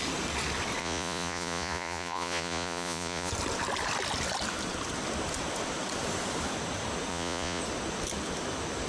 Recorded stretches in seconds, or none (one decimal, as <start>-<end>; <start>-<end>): 0.0-0.8; 3.3-7.1; 7.6-8.9